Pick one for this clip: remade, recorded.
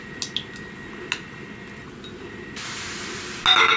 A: recorded